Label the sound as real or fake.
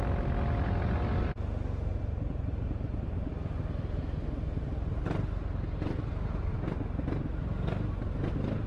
real